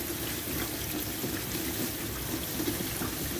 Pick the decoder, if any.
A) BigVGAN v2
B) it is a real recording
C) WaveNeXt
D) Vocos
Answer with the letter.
B